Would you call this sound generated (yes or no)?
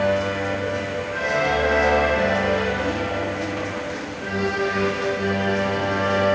no